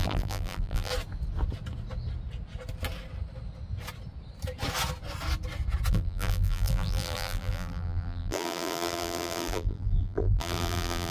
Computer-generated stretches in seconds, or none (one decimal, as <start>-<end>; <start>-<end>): 0.0-0.9; 5.9-11.1